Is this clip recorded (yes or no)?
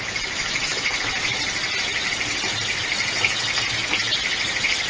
yes